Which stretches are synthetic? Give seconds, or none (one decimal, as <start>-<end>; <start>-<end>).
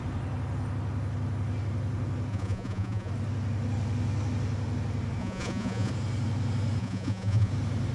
2.3-3.1; 5.2-5.9; 6.8-7.5